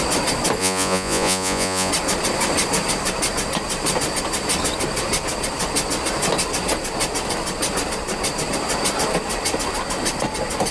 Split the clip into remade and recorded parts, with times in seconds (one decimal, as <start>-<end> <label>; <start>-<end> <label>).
0.0-0.6 recorded; 0.6-1.9 remade; 1.9-10.7 recorded